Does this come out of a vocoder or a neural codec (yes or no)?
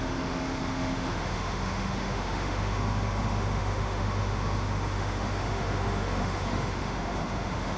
yes